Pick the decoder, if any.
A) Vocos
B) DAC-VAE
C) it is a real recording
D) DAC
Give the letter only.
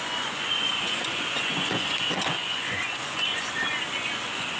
A